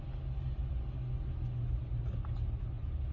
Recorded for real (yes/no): yes